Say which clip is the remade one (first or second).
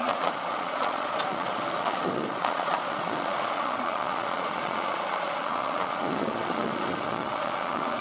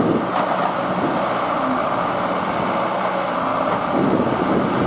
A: first